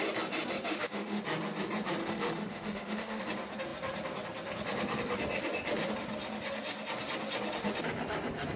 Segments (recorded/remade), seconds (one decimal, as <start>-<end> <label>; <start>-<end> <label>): 0.0-0.7 recorded; 0.7-1.2 remade; 1.2-2.0 recorded; 2.0-3.2 remade; 3.2-8.6 recorded